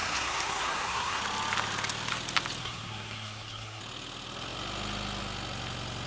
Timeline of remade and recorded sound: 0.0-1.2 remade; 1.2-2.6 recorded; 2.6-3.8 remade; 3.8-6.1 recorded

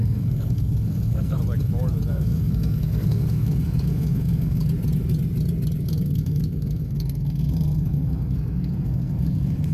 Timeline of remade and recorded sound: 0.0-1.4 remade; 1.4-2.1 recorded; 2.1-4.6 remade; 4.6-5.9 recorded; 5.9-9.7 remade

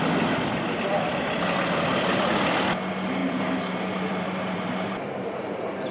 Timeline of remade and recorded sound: 0.0-3.2 recorded; 3.2-5.9 remade

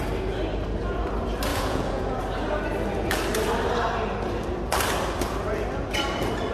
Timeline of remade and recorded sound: 0.0-1.5 recorded; 1.5-2.2 remade; 2.2-6.5 recorded

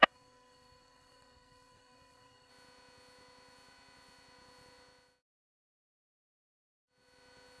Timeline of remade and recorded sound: 0.0-2.5 remade; 2.5-7.6 recorded

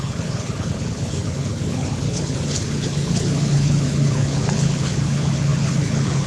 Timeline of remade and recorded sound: 0.0-6.3 remade